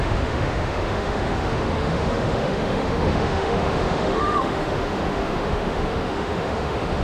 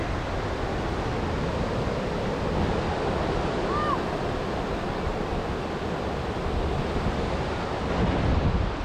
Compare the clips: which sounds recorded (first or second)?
second